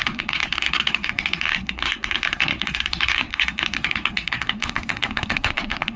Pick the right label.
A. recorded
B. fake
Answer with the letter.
B